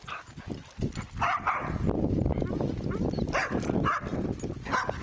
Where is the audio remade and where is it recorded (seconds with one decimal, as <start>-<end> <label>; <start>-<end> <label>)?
0.0-5.0 recorded